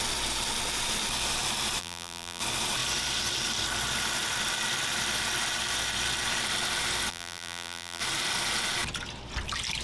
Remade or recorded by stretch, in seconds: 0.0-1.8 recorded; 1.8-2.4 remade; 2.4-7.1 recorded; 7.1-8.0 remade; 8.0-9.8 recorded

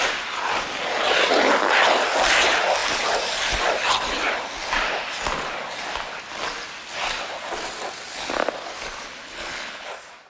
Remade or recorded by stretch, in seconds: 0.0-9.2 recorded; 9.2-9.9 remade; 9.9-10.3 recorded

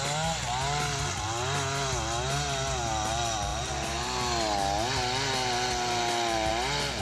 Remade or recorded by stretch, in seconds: 0.0-7.0 recorded

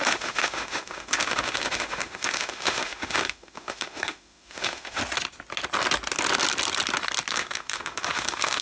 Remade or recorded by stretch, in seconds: 0.0-5.0 remade; 5.0-7.3 recorded; 7.3-8.6 remade